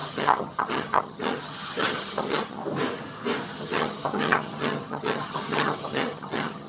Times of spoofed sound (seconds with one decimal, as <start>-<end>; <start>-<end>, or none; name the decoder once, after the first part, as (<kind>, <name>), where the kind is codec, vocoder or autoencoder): 0.0-2.6 (vocoder, HiFi-GAN); 3.5-6.7